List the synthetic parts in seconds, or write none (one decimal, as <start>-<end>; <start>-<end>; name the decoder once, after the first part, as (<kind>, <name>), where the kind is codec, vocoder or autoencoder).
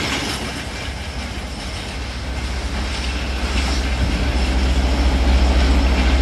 none